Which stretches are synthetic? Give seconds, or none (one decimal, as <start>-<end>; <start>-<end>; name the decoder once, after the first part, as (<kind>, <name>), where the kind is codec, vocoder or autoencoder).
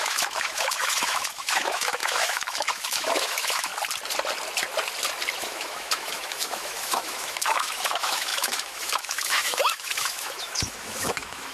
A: 0.0-3.7 (autoencoder, DAC-VAE); 5.4-11.5